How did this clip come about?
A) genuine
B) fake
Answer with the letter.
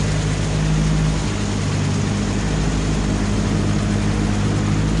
A